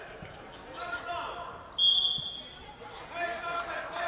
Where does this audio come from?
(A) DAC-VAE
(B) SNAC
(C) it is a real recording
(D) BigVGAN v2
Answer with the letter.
C